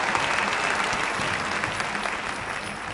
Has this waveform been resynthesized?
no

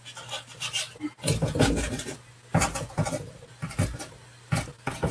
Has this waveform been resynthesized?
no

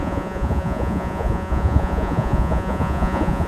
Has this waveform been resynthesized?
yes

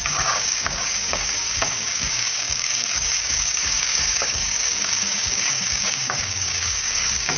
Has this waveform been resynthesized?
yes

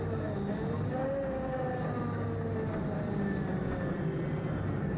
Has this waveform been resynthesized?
no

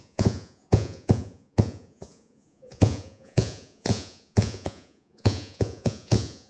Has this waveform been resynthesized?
yes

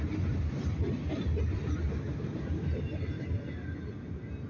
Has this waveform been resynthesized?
no